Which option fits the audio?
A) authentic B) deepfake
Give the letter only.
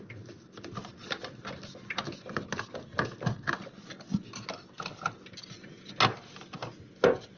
A